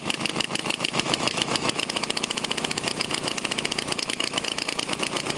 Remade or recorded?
remade